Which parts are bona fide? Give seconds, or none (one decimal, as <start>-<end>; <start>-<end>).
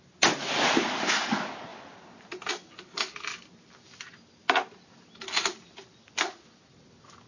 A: 0.0-1.7; 2.5-7.3